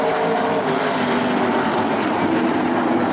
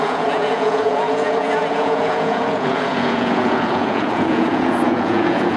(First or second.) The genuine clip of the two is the first